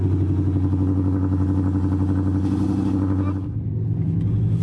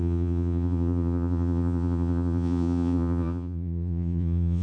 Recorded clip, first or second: first